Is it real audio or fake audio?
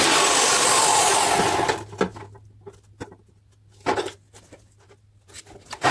real